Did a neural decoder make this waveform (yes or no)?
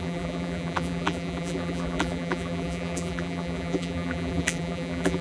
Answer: yes